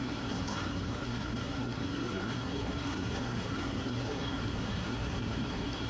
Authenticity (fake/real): fake